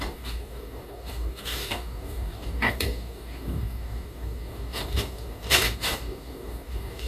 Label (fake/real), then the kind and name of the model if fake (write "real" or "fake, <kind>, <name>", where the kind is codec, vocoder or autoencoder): fake, codec, DAC